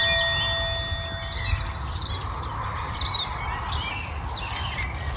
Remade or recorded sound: recorded